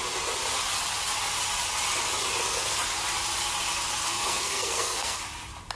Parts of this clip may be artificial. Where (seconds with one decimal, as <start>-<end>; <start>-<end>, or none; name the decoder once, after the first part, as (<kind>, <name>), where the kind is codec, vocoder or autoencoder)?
4.0-5.2 (codec, SNAC)